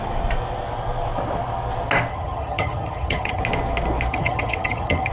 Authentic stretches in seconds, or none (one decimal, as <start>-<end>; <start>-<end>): 0.0-2.1; 3.4-4.1